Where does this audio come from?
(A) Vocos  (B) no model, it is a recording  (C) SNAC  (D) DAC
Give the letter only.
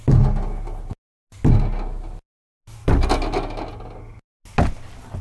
B